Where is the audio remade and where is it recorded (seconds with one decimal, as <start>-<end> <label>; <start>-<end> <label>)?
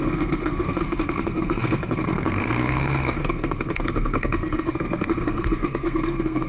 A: 0.0-6.5 remade